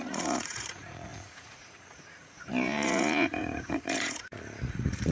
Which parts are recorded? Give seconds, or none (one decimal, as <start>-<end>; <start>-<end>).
none

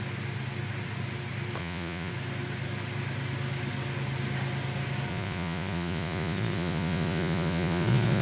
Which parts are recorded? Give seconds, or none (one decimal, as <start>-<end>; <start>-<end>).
0.0-1.6; 2.1-5.1

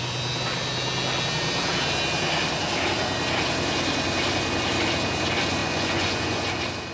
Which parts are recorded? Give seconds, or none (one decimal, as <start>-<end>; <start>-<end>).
0.0-5.6; 6.4-6.9

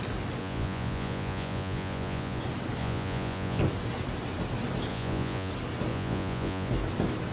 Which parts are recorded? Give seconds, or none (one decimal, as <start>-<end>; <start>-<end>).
0.0-0.4; 2.4-2.8; 3.6-4.9; 5.5-5.9; 6.7-7.3

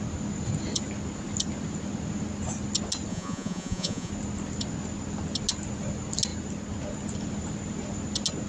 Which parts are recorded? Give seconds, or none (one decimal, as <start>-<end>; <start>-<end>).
0.0-3.1; 4.1-8.5

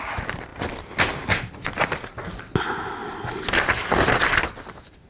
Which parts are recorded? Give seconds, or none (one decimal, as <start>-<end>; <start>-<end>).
0.0-5.1